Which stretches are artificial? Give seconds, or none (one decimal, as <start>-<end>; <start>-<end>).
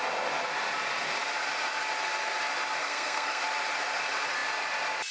2.8-3.4